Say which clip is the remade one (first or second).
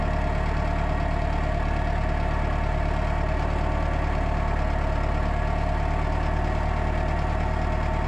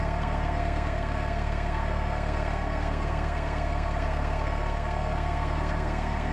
second